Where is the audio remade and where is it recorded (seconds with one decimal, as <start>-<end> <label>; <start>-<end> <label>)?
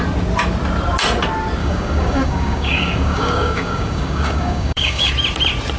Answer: 0.0-1.6 recorded; 1.6-5.1 remade; 5.1-5.8 recorded